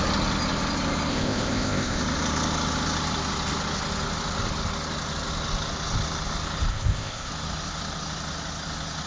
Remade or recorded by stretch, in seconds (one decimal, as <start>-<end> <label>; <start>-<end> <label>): 0.0-1.1 recorded; 1.1-2.0 remade; 2.0-6.7 recorded; 6.7-7.3 remade; 7.3-9.1 recorded